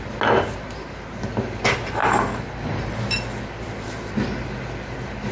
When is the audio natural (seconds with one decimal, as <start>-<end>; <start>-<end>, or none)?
0.0-5.3